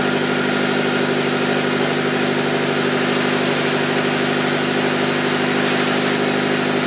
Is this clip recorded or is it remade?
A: recorded